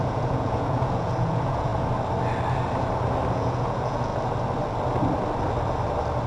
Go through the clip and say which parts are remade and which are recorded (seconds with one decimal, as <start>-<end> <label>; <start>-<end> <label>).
0.0-1.7 remade; 1.7-3.3 recorded; 3.3-4.1 remade; 4.1-6.3 recorded